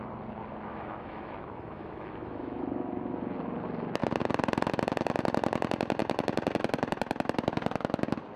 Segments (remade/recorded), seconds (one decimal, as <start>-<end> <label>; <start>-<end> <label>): 0.0-0.7 recorded; 0.7-2.6 remade; 2.6-8.4 recorded